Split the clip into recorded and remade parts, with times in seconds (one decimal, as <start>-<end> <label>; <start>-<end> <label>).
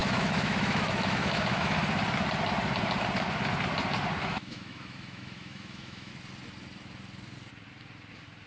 0.0-1.8 remade; 1.8-4.2 recorded; 4.2-6.1 remade; 6.1-8.5 recorded